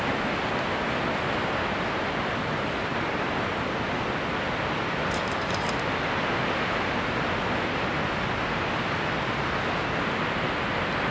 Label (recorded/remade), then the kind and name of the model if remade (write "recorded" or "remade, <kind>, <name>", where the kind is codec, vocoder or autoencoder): recorded